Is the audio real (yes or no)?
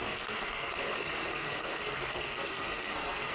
no